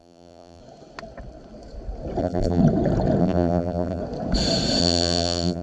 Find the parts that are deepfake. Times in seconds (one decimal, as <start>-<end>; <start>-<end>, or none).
0.0-0.6; 2.2-2.6; 3.2-4.0; 4.8-5.6